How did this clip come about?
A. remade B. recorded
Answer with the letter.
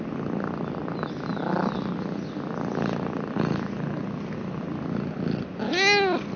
B